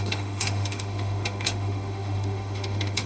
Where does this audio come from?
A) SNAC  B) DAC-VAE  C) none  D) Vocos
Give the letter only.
B